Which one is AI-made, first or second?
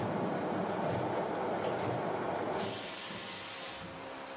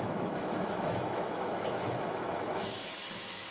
second